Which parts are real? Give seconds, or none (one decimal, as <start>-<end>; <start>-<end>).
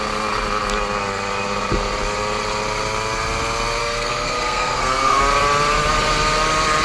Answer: 0.0-3.8; 5.2-6.8